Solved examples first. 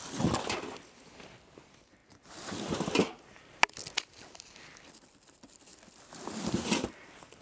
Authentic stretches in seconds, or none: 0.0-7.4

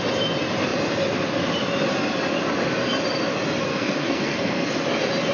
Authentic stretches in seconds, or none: 0.0-3.7; 4.7-5.3

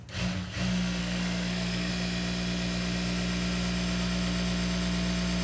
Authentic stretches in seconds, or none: 0.0-1.0; 1.9-5.4

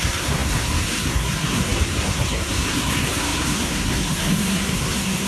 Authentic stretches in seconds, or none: none

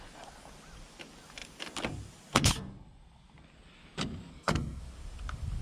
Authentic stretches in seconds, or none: 0.0-4.3; 4.8-5.6

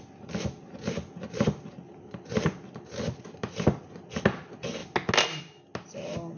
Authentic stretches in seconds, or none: 0.0-6.4